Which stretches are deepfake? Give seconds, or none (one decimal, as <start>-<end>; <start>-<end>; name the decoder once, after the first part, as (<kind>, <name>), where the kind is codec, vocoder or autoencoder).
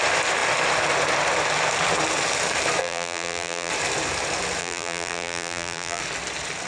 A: 2.8-3.7 (vocoder, BigVGAN v2); 4.6-6.0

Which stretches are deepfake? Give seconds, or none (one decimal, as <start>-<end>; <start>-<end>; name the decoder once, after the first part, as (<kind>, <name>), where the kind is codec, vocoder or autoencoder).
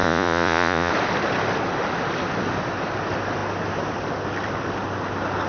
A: 0.0-0.9 (vocoder, Vocos)